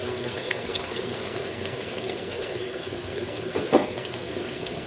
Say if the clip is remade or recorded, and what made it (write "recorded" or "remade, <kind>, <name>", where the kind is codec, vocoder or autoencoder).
remade, codec, SNAC